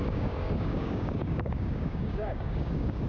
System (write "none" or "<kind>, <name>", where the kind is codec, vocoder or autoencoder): codec, DAC